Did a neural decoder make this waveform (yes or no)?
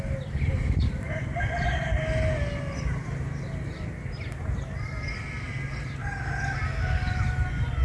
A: no